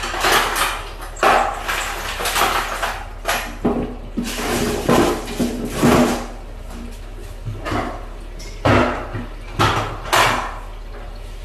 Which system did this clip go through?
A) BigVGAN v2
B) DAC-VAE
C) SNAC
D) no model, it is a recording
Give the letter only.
D